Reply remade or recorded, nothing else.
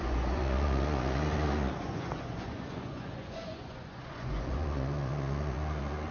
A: remade